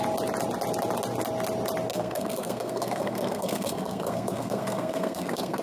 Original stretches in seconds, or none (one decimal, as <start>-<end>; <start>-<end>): 0.0-1.9